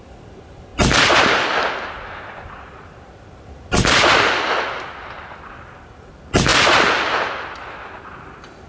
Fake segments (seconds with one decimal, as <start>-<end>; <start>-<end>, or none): none

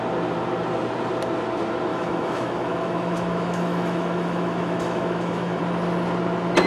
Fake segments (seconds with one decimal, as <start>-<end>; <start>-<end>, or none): 1.9-5.6

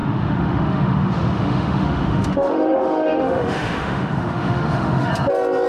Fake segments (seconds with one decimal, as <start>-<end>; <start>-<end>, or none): 0.0-5.1

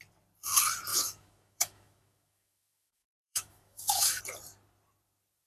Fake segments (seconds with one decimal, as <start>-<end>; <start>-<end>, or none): 0.9-4.2

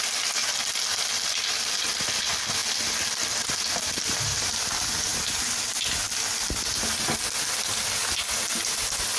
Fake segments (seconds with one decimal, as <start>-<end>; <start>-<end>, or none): none

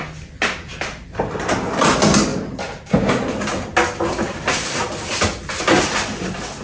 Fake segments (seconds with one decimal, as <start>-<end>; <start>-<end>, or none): none